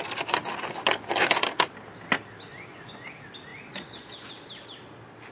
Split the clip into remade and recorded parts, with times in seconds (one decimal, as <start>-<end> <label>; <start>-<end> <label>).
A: 0.0-2.5 recorded; 2.5-3.1 remade; 3.1-3.5 recorded; 3.5-4.3 remade; 4.3-5.3 recorded